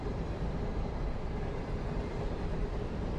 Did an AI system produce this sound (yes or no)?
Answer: yes